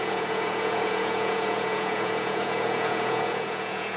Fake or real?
fake